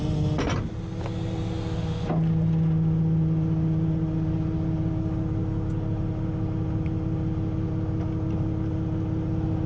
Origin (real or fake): real